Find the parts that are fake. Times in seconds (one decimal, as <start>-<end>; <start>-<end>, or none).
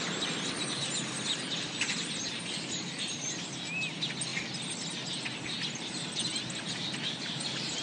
none